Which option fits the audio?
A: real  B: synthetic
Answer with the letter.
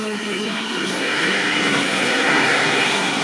B